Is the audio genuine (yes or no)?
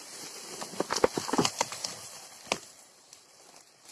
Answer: yes